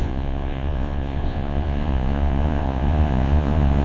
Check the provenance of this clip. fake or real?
fake